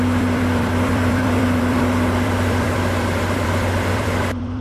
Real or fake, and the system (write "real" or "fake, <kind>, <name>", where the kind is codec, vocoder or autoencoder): fake, vocoder, BigVGAN v2